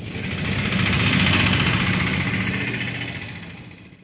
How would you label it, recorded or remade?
recorded